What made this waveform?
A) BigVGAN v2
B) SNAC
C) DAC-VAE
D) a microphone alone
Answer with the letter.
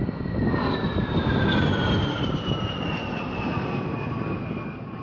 D